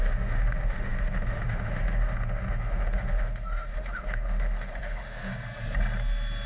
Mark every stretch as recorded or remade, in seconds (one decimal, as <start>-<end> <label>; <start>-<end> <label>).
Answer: 0.0-5.3 remade; 5.3-6.5 recorded